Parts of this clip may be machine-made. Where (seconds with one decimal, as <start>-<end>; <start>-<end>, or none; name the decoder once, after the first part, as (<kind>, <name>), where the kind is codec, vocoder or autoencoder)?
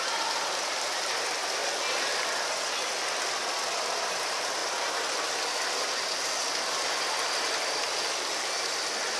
0.0-1.6 (vocoder, BigVGAN v2); 4.0-4.6